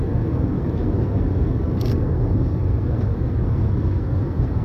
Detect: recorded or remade remade